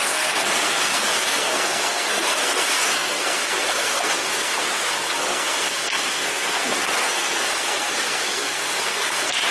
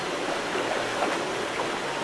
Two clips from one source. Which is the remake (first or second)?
first